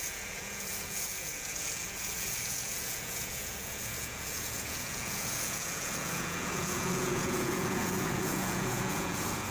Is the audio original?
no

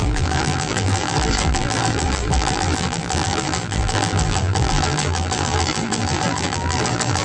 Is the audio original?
no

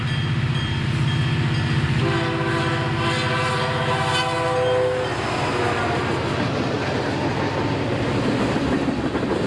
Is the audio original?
yes